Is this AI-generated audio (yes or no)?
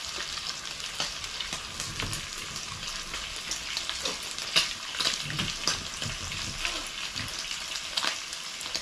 no